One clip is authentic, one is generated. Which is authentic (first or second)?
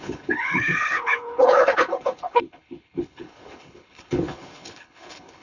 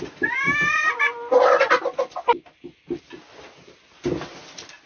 second